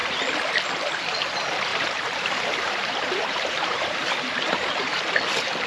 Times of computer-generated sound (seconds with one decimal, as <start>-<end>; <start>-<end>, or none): 1.7-5.1